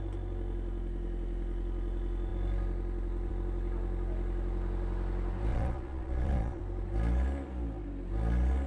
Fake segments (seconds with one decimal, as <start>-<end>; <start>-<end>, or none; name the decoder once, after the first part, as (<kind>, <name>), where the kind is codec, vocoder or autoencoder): 5.5-6.6 (vocoder, Vocos)